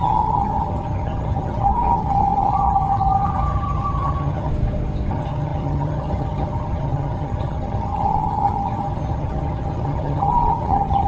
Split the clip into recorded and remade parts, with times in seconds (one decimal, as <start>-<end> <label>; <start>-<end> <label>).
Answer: 0.0-4.5 remade; 4.5-5.1 recorded; 5.1-11.1 remade